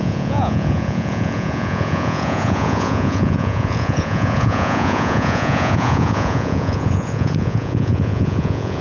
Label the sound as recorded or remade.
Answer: remade